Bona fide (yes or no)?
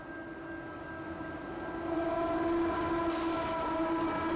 yes